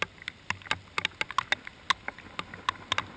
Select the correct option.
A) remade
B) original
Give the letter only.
B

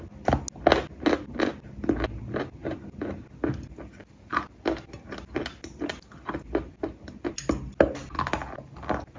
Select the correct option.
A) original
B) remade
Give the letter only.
A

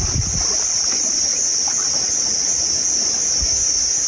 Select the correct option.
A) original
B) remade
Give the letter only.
A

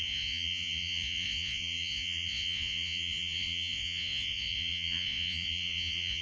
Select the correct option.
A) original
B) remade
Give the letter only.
B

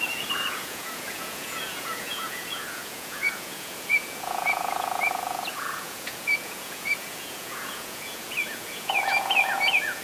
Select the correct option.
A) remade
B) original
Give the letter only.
A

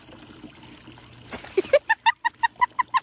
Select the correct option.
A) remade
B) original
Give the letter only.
B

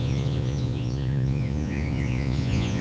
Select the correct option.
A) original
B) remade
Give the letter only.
B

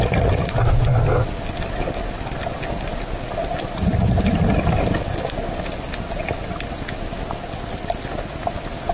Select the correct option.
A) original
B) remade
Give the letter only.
A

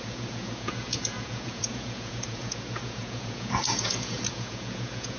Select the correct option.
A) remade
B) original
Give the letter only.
A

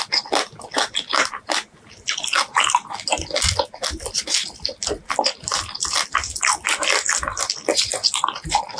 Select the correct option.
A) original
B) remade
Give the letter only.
A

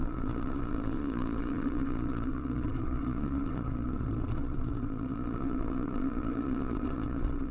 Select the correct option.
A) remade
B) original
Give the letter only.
A